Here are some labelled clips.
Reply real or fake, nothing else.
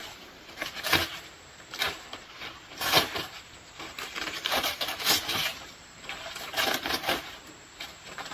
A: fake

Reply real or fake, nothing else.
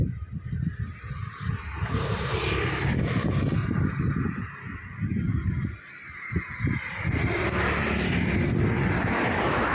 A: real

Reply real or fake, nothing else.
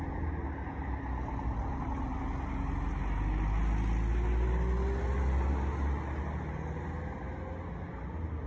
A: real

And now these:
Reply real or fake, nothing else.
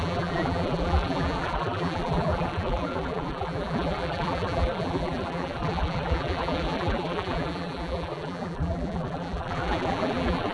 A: fake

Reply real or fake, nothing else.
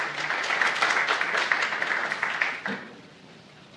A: real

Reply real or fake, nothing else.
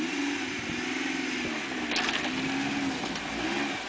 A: real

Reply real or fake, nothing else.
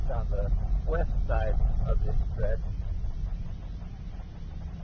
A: fake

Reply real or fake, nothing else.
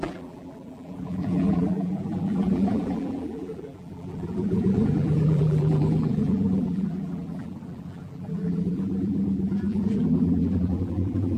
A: fake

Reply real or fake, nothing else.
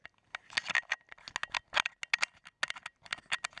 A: real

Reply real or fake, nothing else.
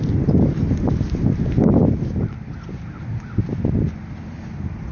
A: real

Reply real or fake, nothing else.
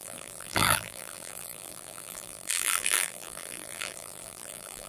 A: fake